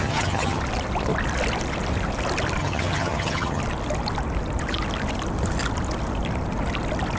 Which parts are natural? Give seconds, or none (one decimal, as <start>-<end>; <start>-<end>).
0.6-2.6; 3.6-7.2